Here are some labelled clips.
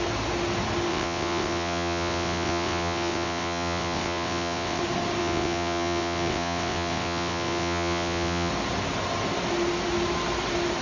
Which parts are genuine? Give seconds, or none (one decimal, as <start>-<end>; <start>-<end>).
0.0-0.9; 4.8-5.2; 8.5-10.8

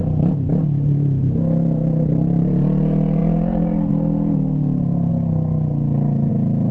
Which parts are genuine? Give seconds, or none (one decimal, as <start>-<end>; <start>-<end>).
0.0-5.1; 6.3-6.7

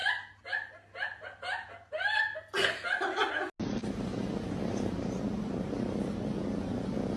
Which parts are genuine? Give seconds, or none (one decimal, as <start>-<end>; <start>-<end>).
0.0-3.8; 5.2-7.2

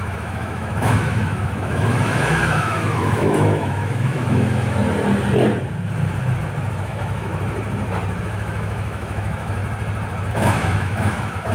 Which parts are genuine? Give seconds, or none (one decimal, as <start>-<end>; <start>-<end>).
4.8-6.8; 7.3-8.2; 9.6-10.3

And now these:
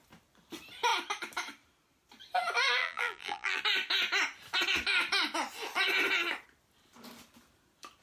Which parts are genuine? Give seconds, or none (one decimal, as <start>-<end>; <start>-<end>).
0.0-2.8; 3.6-8.0